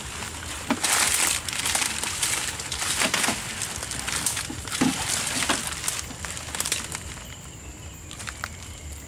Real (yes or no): yes